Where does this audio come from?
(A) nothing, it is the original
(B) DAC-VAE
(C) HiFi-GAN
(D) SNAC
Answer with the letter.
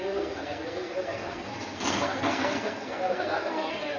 D